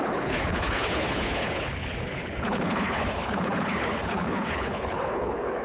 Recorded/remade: remade